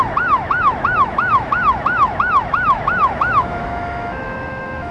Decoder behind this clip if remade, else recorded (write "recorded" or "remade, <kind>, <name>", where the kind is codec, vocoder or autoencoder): remade, autoencoder, DAC-VAE